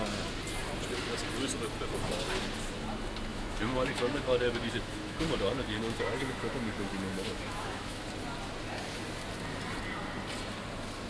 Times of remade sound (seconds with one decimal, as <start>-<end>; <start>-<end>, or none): 3.3-8.0

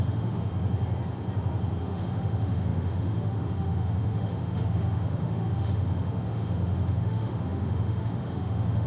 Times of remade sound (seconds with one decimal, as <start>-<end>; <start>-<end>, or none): 0.0-0.5; 1.8-8.9

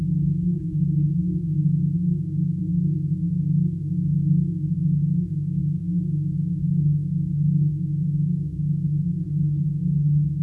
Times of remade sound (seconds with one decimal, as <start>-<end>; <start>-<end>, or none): 0.0-9.1; 9.6-10.4